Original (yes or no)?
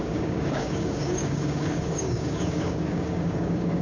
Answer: no